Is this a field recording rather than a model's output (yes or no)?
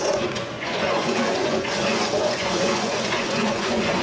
no